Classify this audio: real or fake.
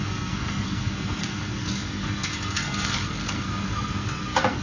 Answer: fake